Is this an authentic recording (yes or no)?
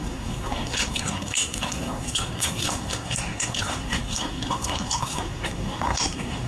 no